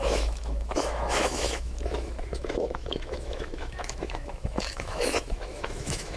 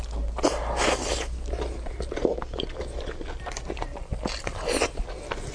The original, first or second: second